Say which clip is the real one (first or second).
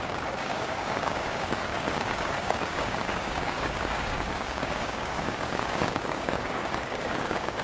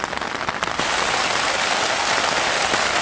second